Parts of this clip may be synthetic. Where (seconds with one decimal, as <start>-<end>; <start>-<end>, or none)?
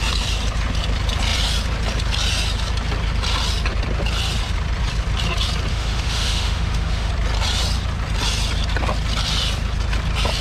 5.7-7.1